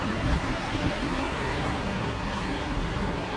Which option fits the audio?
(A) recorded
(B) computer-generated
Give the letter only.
B